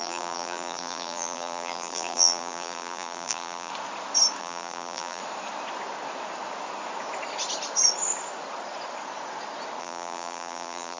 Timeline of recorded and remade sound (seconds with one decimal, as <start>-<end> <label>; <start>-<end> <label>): 0.0-3.7 remade; 3.7-4.4 recorded; 4.4-5.2 remade; 5.2-9.8 recorded; 9.8-11.0 remade